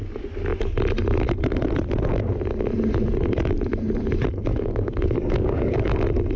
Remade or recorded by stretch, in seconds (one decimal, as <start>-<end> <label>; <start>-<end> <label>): 0.0-4.5 recorded; 4.5-5.9 remade; 5.9-6.4 recorded